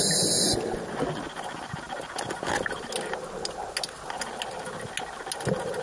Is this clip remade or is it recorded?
recorded